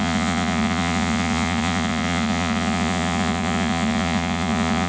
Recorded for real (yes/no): no